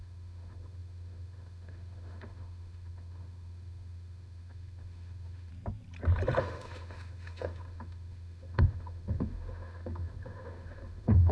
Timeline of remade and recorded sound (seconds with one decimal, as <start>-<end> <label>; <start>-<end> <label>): 0.0-5.5 remade; 5.5-6.4 recorded; 6.4-11.3 remade